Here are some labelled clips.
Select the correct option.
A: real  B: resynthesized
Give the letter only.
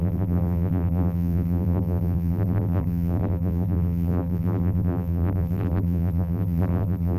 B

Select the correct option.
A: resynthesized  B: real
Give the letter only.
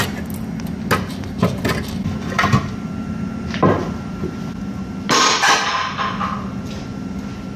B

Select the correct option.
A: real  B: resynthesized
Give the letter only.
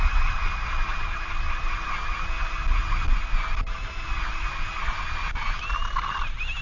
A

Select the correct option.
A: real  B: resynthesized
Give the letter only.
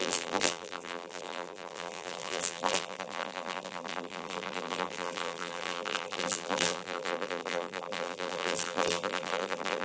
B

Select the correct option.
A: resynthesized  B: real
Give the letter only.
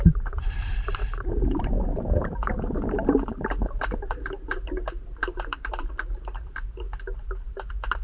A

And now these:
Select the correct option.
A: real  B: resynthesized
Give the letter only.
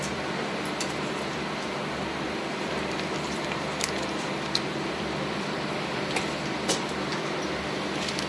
B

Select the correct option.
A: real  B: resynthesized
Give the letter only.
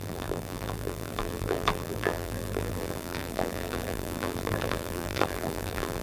B